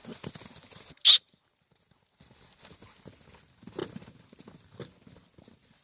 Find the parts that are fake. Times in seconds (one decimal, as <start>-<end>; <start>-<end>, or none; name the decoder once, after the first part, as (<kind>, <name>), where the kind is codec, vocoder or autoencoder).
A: none